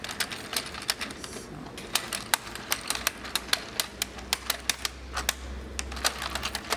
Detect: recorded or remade recorded